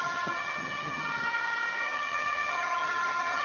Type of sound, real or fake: fake